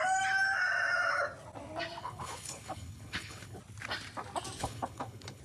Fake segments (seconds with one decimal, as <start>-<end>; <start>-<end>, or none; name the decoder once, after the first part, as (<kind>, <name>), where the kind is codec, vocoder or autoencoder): 2.0-3.6 (codec, HILCodec); 4.6-5.4